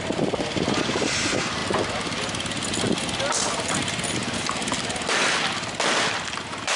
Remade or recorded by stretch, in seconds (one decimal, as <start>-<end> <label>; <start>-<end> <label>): 0.0-6.8 recorded